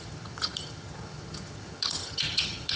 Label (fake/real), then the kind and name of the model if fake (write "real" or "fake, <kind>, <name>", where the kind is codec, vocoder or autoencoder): fake, vocoder, HiFi-GAN